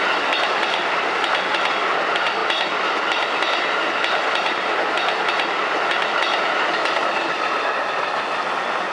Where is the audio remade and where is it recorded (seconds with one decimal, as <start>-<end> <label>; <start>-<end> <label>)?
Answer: 0.0-8.9 recorded